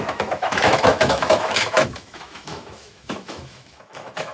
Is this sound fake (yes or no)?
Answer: yes